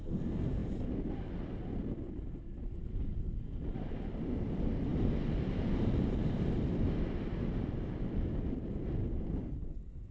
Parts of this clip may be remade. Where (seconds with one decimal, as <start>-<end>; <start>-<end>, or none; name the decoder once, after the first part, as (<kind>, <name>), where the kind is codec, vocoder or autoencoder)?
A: none